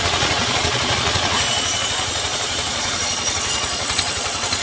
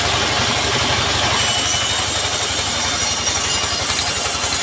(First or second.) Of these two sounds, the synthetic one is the first